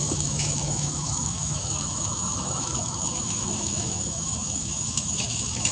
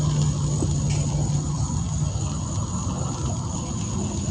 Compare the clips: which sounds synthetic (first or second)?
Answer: first